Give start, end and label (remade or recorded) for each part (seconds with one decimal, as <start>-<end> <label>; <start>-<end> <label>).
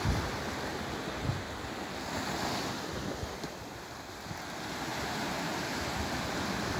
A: 0.0-4.9 recorded; 4.9-6.2 remade; 6.2-6.8 recorded